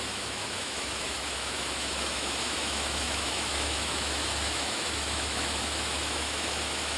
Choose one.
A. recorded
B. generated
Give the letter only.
B